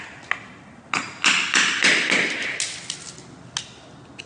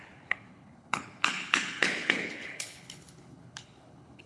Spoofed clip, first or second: second